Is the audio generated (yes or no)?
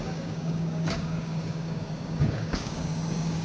yes